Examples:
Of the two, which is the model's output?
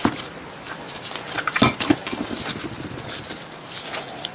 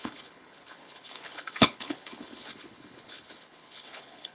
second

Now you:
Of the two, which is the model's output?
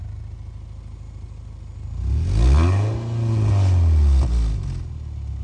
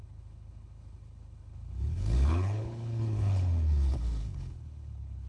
second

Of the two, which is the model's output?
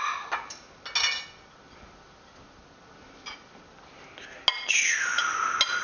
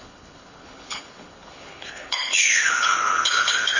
second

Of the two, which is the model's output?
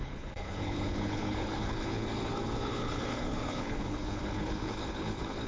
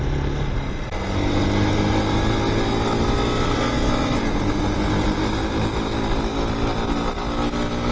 first